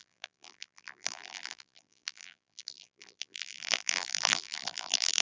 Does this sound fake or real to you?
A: fake